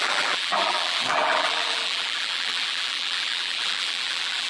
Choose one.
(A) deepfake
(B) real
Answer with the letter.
A